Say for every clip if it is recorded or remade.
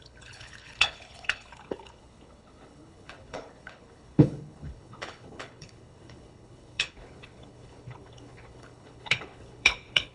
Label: remade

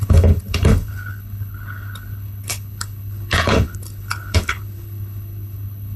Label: remade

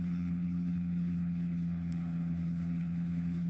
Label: remade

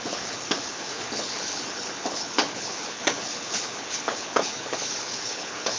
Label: remade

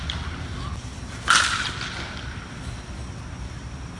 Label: recorded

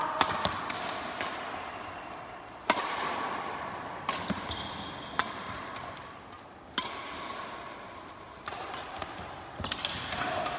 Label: recorded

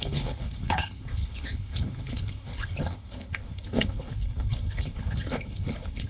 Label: remade